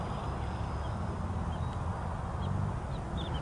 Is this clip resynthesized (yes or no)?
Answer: no